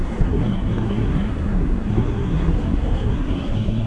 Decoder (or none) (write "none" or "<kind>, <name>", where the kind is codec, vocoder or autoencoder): codec, SNAC